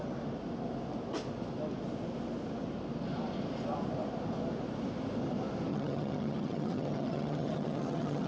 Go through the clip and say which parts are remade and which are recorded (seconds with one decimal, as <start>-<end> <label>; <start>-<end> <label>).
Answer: 0.0-5.7 recorded; 5.7-8.3 remade